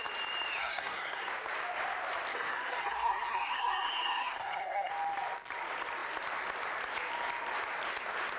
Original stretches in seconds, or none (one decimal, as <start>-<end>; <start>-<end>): 0.0-0.6; 1.3-2.3; 4.9-8.4